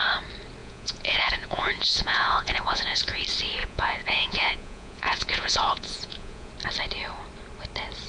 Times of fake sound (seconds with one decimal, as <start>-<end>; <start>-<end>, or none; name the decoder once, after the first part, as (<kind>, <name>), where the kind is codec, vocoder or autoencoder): 0.6-3.2 (vocoder, Vocos); 3.6-6.5